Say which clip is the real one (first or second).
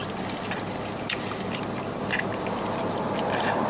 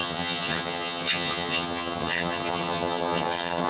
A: first